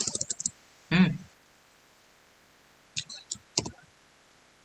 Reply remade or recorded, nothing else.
recorded